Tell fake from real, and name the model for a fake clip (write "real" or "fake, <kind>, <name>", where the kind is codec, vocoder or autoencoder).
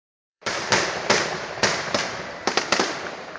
fake, vocoder, BigVGAN v2